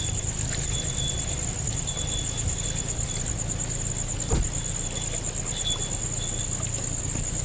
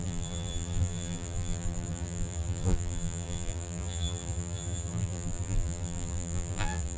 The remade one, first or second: second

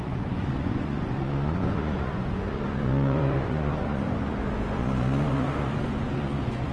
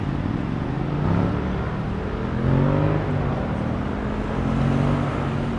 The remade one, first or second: first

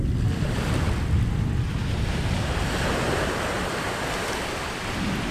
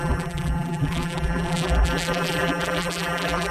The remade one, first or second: second